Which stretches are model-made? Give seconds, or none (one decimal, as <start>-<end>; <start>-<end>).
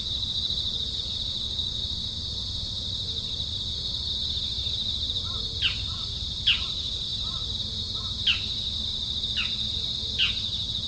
none